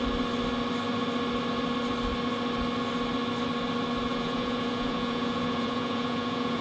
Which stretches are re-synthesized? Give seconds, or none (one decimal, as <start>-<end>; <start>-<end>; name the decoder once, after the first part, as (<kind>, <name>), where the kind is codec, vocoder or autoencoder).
4.1-6.6 (vocoder, Vocos)